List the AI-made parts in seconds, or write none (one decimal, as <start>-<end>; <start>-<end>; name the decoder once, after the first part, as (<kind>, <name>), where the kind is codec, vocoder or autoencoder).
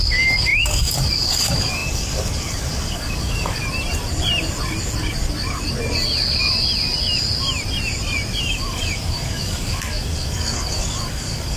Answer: 0.0-3.6 (codec, DAC); 8.4-11.6